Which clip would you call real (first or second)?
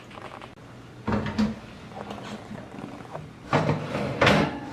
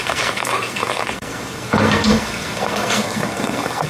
first